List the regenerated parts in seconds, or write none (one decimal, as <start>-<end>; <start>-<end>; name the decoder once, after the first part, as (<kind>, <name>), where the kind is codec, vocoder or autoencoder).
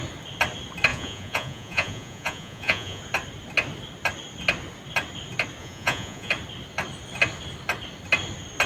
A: 0.9-3.0 (vocoder, Vocos); 5.6-6.3